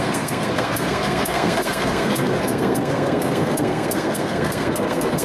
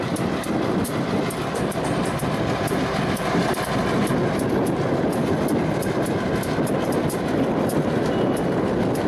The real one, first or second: second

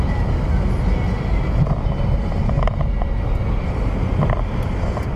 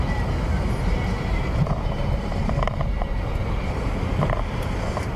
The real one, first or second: first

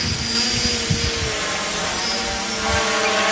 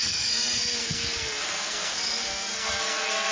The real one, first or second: first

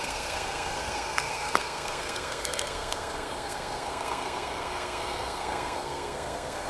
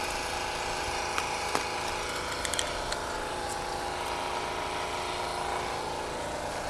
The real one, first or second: second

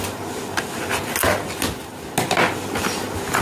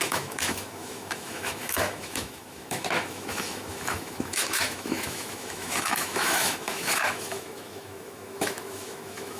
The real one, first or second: first